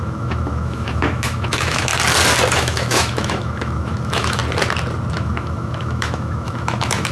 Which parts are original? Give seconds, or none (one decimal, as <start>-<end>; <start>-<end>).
1.9-2.5; 4.4-5.1

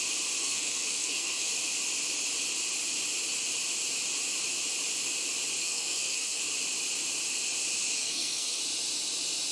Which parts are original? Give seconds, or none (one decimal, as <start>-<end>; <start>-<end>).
0.0-0.4; 1.5-5.6; 6.4-8.0; 8.6-9.5

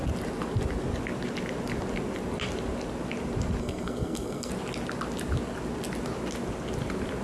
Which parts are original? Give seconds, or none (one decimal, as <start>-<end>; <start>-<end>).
0.0-3.6; 4.5-7.2

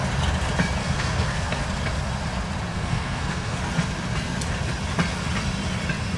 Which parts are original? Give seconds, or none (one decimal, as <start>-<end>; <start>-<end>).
0.0-0.8; 1.6-2.7; 3.6-6.2

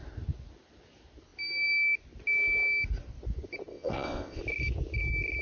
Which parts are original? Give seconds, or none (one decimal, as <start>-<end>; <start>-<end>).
0.0-3.7; 4.4-5.4

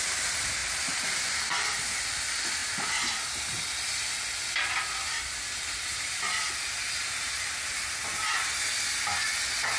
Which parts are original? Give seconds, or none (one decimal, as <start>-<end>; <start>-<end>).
0.0-0.6; 2.1-7.2; 7.9-9.8